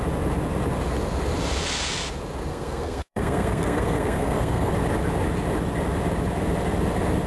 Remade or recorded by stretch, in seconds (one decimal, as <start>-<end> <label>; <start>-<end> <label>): 0.0-2.5 recorded; 2.5-4.7 remade; 4.7-7.3 recorded

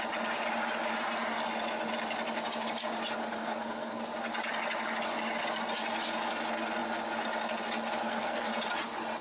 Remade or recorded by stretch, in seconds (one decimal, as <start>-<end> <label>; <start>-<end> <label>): 0.0-3.4 recorded; 3.4-4.0 remade; 4.0-8.0 recorded; 8.0-8.5 remade; 8.5-9.2 recorded

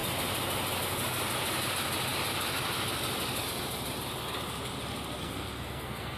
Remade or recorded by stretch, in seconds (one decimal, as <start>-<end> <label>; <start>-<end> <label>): 0.0-5.2 recorded; 5.2-6.2 remade

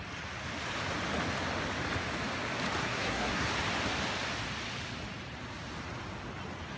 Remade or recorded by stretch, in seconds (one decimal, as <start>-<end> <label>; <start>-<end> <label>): 0.0-2.8 recorded; 2.8-3.5 remade; 3.5-6.8 recorded

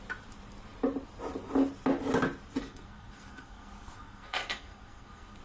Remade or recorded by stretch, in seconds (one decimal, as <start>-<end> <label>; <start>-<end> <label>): 0.0-2.6 recorded; 2.6-5.4 remade